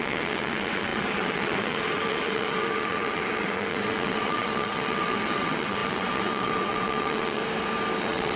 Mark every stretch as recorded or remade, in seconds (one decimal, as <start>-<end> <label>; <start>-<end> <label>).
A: 0.0-7.4 remade; 7.4-8.0 recorded; 8.0-8.4 remade